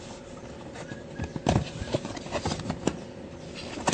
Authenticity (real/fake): real